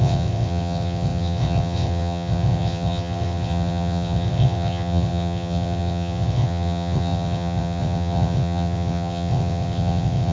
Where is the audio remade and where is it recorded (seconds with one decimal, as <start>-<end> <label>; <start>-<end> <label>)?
0.0-10.3 remade